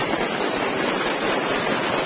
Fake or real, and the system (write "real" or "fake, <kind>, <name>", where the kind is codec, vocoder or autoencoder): real